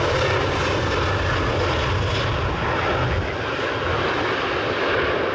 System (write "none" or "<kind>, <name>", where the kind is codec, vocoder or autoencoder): none